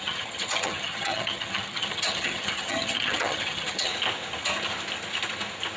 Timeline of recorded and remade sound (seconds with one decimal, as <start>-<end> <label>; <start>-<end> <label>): 0.0-3.9 remade; 3.9-5.8 recorded